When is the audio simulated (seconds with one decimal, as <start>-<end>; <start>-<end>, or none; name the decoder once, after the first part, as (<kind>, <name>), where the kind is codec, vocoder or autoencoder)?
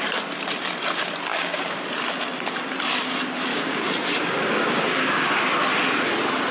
1.3-1.8 (codec, DAC); 3.5-4.8